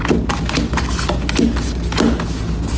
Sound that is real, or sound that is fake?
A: real